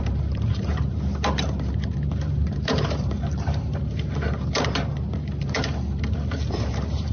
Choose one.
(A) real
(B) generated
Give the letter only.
B